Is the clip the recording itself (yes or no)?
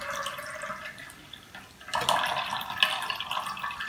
yes